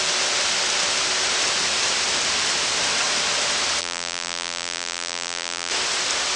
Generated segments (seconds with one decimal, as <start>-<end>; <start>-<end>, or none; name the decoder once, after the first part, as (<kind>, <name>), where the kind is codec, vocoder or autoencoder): 3.8-5.7 (vocoder, BigVGAN v2)